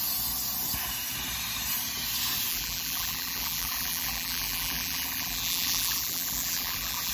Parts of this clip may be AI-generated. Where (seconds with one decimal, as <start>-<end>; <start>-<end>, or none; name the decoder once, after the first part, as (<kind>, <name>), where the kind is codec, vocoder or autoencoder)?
2.5-7.1 (vocoder, BigVGAN v2)